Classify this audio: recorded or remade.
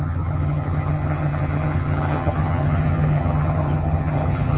remade